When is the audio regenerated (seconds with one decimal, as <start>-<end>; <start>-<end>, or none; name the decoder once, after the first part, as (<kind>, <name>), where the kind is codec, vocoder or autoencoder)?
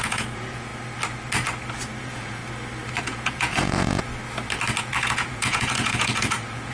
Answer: 0.0-0.7 (vocoder, Vocos); 2.0-2.4; 3.0-4.1; 4.8-6.7